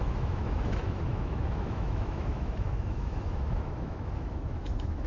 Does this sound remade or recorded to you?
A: remade